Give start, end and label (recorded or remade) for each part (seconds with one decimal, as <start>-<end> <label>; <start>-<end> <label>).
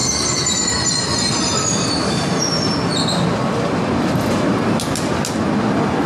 0.0-2.7 remade; 2.7-6.1 recorded